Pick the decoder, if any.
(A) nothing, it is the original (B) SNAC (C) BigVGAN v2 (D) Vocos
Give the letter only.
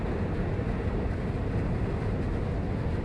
A